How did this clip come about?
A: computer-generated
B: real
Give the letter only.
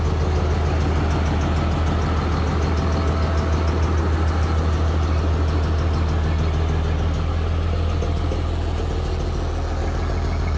B